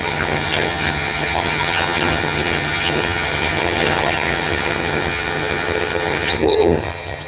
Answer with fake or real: fake